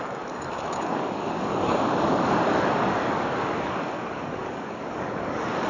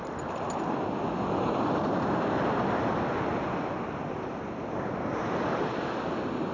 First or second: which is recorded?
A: second